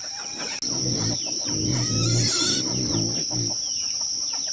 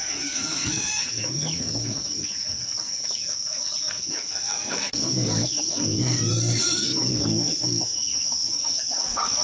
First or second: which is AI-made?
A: second